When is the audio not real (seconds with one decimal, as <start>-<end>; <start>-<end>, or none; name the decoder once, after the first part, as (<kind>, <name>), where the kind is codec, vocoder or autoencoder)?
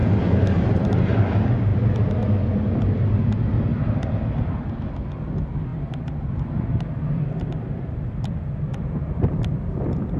none